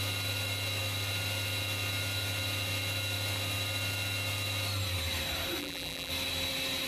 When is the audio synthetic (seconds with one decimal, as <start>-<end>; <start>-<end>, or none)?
5.6-6.1

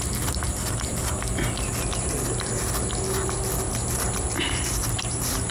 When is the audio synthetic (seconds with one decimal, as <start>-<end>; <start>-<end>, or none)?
0.0-1.0; 4.3-5.5

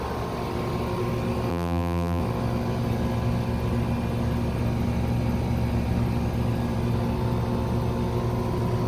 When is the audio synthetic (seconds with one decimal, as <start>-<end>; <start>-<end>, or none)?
1.5-2.2

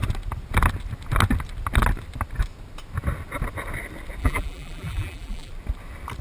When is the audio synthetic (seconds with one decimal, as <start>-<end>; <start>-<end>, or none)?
4.2-5.5

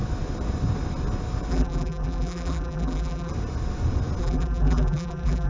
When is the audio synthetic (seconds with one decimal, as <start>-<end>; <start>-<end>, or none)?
1.5-3.3; 4.2-5.5

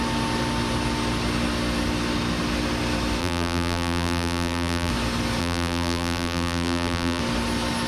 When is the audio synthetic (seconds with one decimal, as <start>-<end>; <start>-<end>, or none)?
3.2-4.9; 5.4-7.2

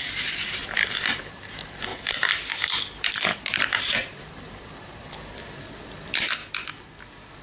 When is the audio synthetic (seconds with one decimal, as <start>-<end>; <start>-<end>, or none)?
1.9-2.5; 3.3-5.0